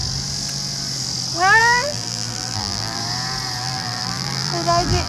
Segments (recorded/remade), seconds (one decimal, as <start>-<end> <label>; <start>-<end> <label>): 0.0-1.6 recorded; 1.6-3.0 remade; 3.0-3.6 recorded; 3.6-5.1 remade